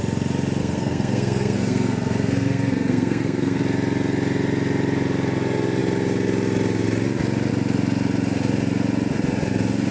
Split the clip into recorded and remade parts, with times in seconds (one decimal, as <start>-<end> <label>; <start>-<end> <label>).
0.0-0.6 recorded; 0.6-3.6 remade; 3.6-9.9 recorded